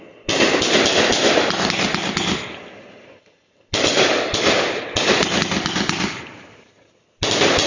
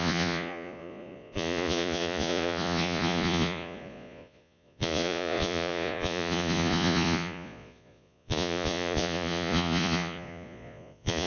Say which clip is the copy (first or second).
second